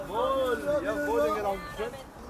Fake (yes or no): no